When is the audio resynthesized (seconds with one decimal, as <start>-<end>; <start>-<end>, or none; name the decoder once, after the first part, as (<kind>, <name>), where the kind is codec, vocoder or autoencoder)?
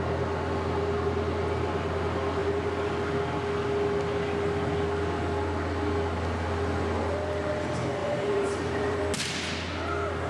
8.0-9.0 (vocoder, BigVGAN v2)